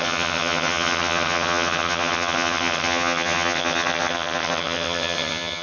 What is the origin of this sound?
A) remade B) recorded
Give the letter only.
A